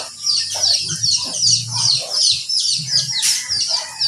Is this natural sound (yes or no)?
yes